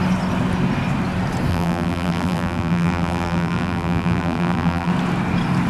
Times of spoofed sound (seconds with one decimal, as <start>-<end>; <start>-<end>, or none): 1.5-4.9